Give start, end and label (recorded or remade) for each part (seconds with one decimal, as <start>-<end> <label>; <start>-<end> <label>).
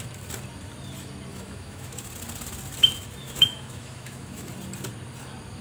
0.0-1.3 recorded; 1.3-2.1 remade; 2.1-3.2 recorded; 3.2-4.5 remade; 4.5-5.6 recorded